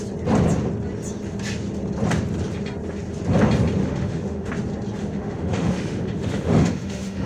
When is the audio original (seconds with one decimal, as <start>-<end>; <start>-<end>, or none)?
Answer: 0.0-3.8; 4.5-5.0